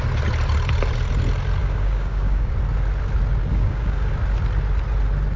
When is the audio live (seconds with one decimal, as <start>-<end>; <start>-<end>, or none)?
0.0-1.6; 2.5-3.5; 4.1-5.4